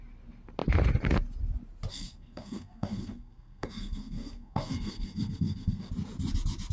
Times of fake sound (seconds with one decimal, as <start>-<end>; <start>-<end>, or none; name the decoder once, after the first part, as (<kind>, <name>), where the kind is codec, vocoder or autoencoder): 1.9-5.9 (codec, SNAC)